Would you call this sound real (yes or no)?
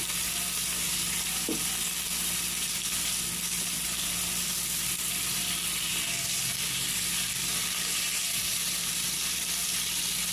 no